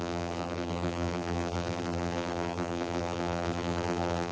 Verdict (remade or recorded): remade